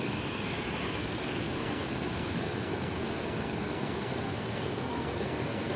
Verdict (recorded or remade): remade